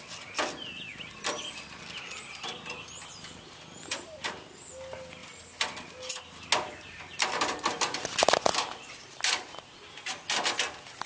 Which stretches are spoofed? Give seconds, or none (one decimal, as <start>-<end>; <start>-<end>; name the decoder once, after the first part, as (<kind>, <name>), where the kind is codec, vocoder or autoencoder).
0.9-1.8 (vocoder, BigVGAN v2); 3.9-4.6